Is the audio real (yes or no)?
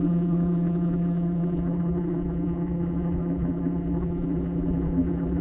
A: no